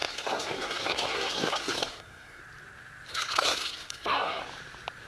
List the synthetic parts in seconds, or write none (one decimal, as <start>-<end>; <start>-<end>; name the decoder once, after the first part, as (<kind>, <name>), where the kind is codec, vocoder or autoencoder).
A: 0.0-2.4 (codec, SNAC); 3.1-4.4

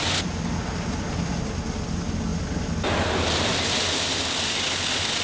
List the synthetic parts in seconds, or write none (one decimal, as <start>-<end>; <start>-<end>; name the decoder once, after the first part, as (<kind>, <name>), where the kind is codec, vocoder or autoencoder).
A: none

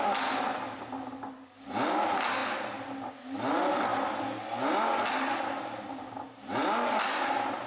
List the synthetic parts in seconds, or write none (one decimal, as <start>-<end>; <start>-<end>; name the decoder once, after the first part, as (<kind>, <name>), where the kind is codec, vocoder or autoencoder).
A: none